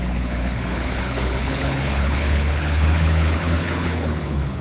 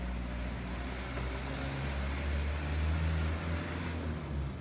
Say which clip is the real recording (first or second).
second